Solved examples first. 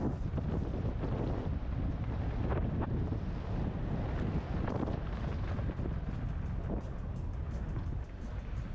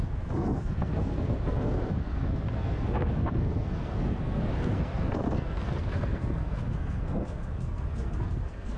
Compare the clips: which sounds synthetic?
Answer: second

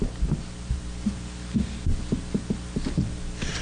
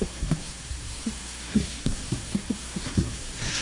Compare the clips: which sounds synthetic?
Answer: second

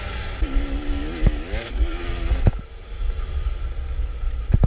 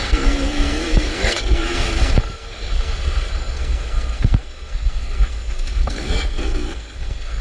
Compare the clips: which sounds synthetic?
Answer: second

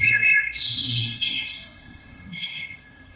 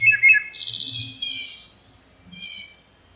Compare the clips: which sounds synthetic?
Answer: first